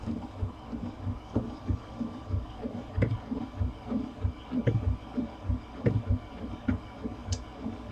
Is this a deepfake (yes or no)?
yes